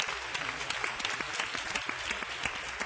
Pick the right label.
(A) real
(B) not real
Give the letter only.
A